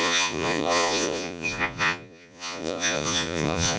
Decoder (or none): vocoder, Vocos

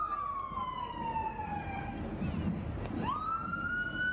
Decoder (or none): none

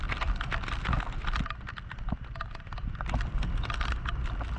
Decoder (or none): none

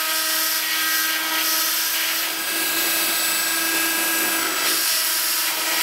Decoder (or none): none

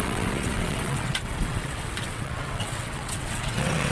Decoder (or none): vocoder, WaveNeXt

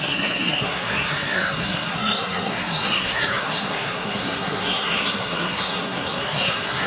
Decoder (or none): codec, SNAC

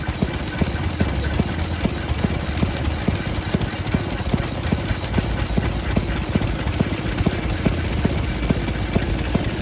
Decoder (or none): none